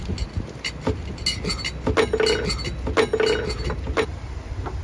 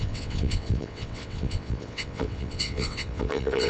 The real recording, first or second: first